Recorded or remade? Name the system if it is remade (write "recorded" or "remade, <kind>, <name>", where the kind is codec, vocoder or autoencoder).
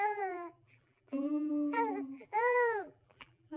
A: remade, vocoder, BigVGAN v2